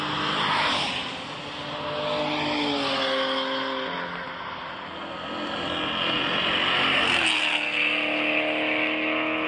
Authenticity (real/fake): real